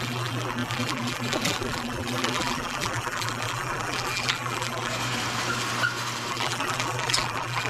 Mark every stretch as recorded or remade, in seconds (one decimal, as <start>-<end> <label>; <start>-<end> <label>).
0.0-4.9 remade; 4.9-6.3 recorded; 6.3-7.7 remade